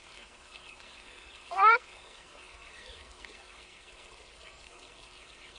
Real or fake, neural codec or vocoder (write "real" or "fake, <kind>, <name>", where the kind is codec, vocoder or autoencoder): fake, codec, SNAC